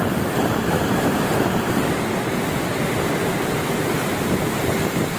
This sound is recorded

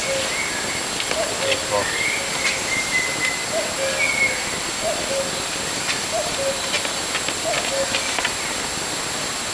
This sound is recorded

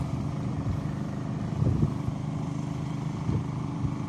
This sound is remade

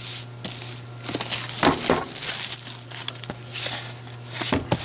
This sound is recorded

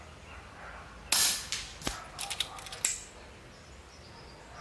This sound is recorded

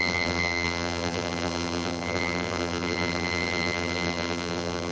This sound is remade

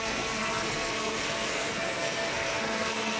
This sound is remade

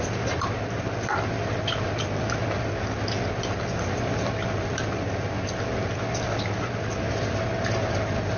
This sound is recorded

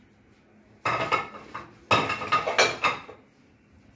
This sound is recorded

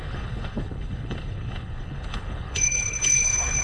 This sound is remade